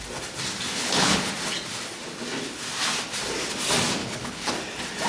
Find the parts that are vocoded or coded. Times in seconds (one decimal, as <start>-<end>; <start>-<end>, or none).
0.8-1.3; 4.0-4.5